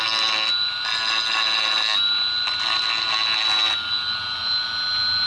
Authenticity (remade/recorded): recorded